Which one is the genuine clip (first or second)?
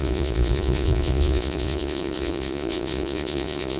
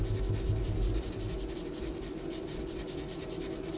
second